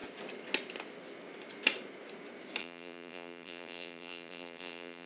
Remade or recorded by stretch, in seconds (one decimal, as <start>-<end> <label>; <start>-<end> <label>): 0.0-2.6 recorded; 2.6-5.1 remade